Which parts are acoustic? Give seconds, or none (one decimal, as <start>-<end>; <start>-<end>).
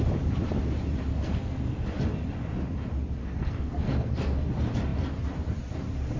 0.0-1.1; 1.9-3.2; 4.5-6.2